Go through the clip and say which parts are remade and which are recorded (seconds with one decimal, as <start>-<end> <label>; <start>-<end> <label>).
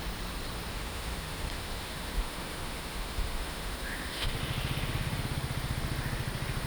0.0-0.7 recorded; 0.7-4.3 remade; 4.3-6.7 recorded